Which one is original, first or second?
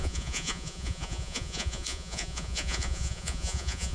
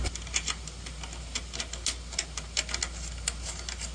second